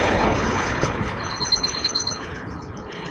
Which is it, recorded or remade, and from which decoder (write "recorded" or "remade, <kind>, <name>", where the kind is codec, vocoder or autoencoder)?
remade, codec, HILCodec